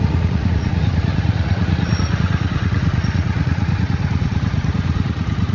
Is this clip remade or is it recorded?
remade